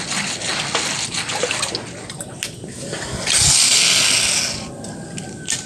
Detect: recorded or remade recorded